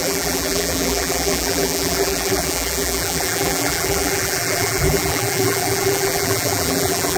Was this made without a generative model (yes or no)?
no